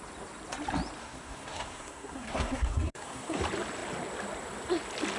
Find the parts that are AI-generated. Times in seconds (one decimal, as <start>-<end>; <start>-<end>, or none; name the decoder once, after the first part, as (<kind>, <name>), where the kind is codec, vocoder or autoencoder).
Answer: 1.0-3.4 (codec, SNAC)